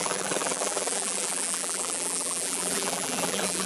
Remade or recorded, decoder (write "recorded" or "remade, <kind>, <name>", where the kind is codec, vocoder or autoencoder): remade, vocoder, BigVGAN v2